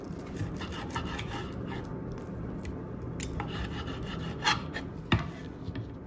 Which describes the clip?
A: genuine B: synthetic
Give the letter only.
A